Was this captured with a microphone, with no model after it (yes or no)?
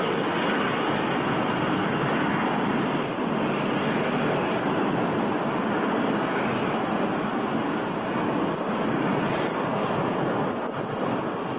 yes